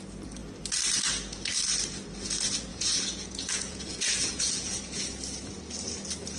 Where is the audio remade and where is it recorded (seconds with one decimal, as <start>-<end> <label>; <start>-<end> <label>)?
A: 0.0-2.7 recorded; 2.7-4.8 remade; 4.8-6.4 recorded